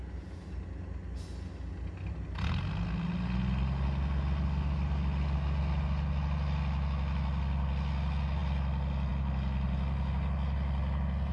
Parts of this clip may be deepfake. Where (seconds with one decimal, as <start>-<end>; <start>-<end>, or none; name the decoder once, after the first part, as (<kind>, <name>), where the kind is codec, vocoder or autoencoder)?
none